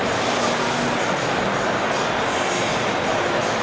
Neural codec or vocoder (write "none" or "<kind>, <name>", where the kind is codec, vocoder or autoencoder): none